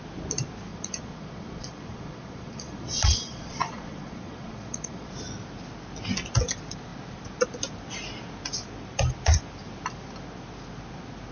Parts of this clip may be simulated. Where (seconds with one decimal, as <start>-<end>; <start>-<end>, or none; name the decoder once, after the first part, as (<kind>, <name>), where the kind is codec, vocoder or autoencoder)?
0.7-5.1 (vocoder, Vocos)